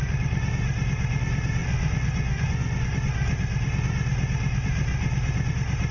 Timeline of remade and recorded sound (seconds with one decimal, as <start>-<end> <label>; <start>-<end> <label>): 0.0-1.6 recorded; 1.6-2.9 remade; 2.9-5.9 recorded